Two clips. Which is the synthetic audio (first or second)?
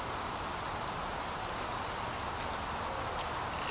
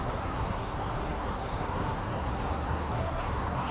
second